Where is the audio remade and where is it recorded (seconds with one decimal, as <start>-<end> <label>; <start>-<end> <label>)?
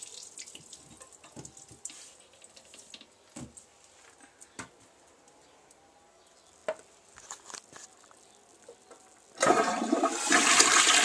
0.0-11.0 recorded